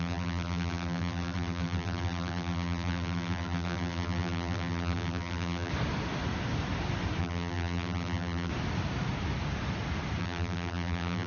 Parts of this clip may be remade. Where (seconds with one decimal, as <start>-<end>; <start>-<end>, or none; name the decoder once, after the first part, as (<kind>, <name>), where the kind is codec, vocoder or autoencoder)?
0.0-5.7 (vocoder, BigVGAN v2); 7.2-8.5; 10.2-11.3